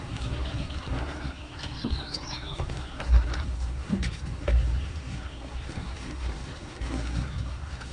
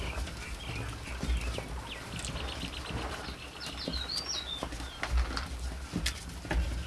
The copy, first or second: first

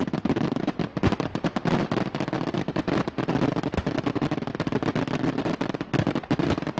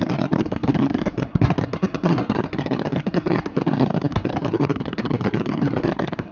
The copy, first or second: second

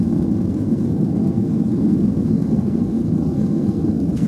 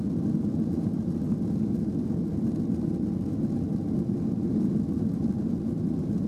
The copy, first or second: first